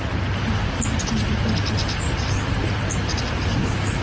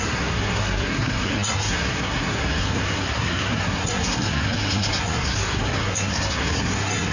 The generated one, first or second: second